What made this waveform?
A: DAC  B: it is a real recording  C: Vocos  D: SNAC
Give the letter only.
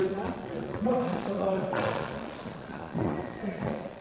C